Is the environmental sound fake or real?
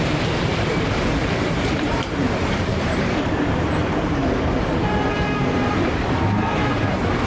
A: fake